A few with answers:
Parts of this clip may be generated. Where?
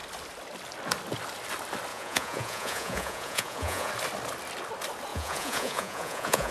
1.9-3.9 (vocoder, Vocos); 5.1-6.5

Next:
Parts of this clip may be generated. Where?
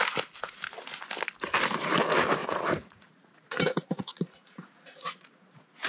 2.4-5.9 (vocoder, Vocos)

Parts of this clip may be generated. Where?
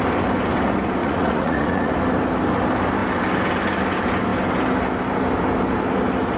1.0-1.9 (vocoder, Vocos)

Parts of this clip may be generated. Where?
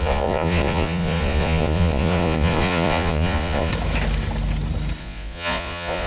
0.0-3.7 (vocoder, Vocos); 5.0-6.1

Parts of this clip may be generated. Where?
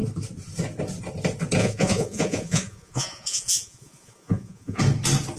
1.6-4.8 (vocoder, Vocos)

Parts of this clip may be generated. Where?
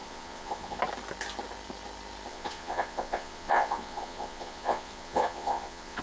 0.0-0.8 (vocoder, Vocos); 2.3-6.0